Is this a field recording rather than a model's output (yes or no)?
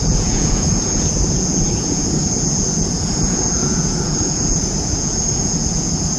no